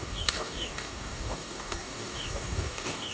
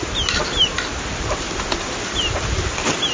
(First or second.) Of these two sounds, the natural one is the second